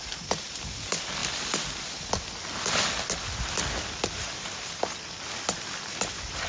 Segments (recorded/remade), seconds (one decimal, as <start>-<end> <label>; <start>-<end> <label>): 0.0-6.5 recorded